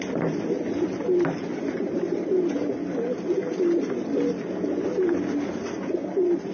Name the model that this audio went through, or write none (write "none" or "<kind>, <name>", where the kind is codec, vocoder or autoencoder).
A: none